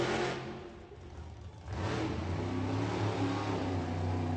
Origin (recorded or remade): recorded